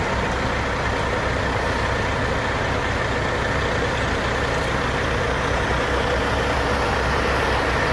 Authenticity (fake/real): real